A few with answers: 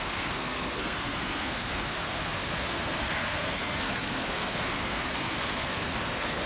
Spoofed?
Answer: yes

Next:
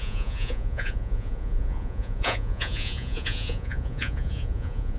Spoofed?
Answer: yes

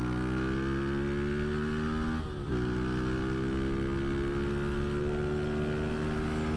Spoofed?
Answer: no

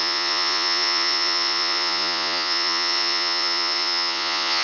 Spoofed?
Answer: yes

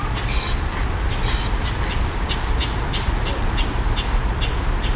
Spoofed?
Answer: no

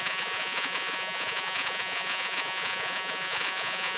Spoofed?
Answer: yes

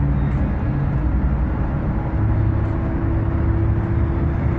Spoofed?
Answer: no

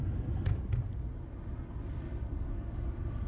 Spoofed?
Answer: no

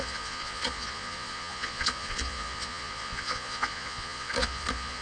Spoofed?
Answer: yes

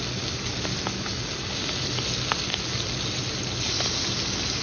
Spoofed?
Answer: no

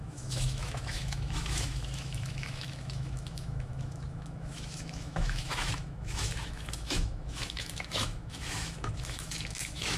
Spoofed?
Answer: yes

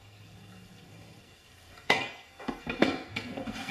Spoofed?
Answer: yes